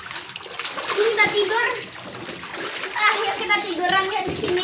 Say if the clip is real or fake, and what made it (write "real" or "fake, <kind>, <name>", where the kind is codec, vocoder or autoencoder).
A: real